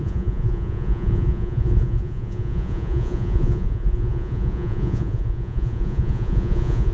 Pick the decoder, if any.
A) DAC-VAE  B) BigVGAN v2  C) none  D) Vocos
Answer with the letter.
D